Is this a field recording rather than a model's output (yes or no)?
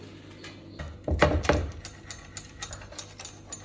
yes